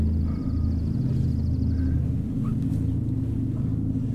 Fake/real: real